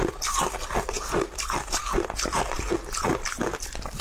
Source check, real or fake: real